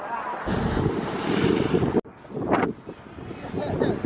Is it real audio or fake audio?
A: real